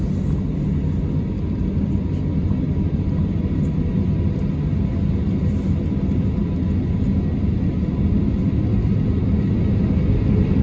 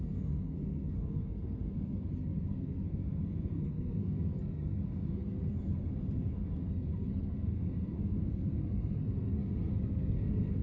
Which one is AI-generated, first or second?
second